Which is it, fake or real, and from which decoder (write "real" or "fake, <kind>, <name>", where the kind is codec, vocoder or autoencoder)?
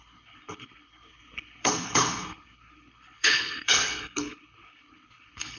fake, codec, HILCodec